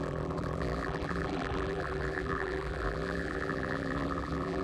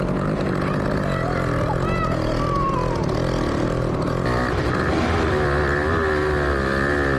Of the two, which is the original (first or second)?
second